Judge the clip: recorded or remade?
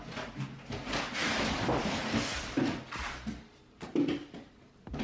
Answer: recorded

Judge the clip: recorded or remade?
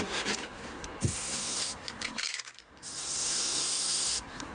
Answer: remade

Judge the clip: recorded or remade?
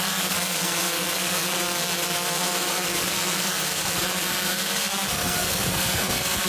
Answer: remade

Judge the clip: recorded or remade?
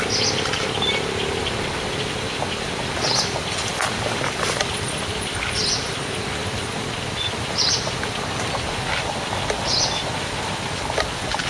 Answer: recorded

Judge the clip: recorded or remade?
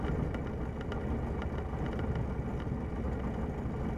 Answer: recorded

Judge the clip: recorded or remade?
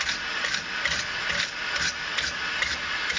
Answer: recorded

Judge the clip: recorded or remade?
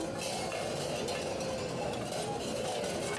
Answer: recorded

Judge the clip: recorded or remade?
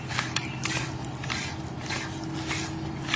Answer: recorded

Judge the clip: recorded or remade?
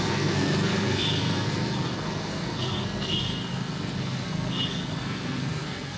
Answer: remade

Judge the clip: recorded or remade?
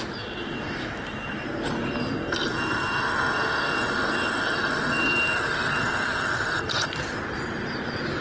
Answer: recorded